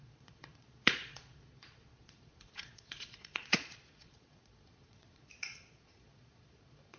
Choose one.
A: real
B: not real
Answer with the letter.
B